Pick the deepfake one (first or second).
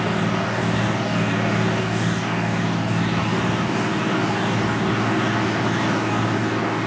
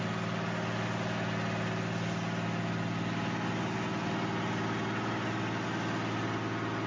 first